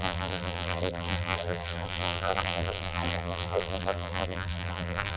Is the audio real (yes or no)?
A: no